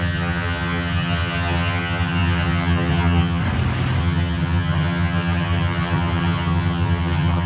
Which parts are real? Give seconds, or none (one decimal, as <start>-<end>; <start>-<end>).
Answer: 3.4-4.0